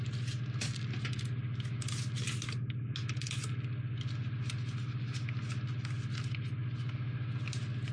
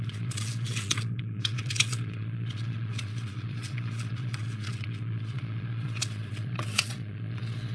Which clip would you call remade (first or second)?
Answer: second